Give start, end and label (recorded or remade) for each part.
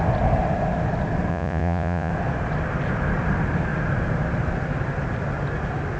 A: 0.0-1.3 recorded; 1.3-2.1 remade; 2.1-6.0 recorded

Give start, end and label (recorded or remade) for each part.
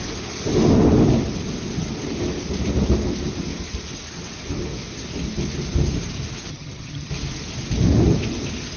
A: 0.0-6.5 recorded; 6.5-7.1 remade; 7.1-8.8 recorded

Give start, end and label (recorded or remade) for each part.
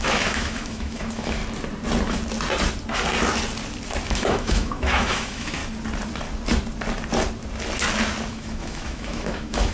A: 0.0-1.4 remade; 1.4-4.1 recorded; 4.1-5.6 remade; 5.6-8.3 recorded; 8.3-9.7 remade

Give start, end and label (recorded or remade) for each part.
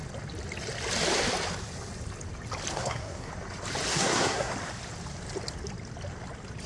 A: 0.0-2.7 recorded; 2.7-3.3 remade; 3.3-3.9 recorded; 3.9-4.5 remade; 4.5-6.7 recorded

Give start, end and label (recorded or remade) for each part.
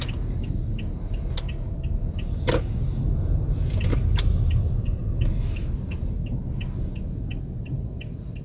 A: 0.0-8.4 recorded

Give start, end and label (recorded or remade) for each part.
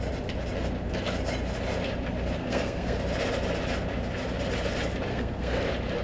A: 0.0-2.4 recorded; 2.4-3.0 remade; 3.0-5.1 recorded; 5.1-5.6 remade; 5.6-6.0 recorded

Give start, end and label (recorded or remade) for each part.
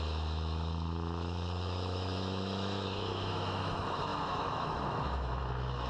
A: 0.0-5.9 remade